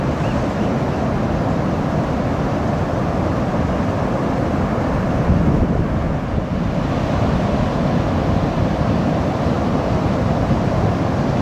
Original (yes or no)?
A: yes